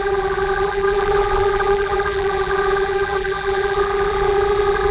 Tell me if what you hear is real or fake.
fake